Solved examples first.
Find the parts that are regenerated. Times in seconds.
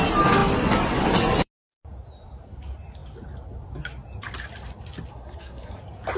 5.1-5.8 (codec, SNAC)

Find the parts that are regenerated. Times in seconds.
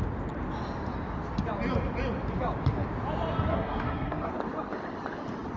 3.5-4.3 (codec, SNAC)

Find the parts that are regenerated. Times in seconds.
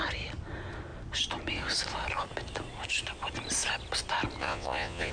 4.4-5.1 (vocoder, Vocos)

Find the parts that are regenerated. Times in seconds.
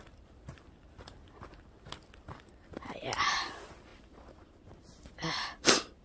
none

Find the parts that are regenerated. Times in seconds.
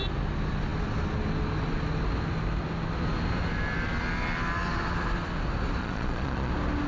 5.8-6.5 (vocoder, Vocos)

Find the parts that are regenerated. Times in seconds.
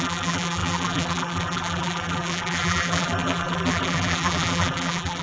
0.0-5.2 (vocoder, BigVGAN v2)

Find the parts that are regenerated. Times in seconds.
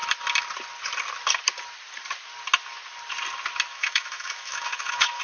3.7-5.2 (autoencoder, DAC-VAE)